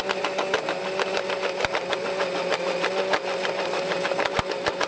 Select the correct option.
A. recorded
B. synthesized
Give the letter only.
A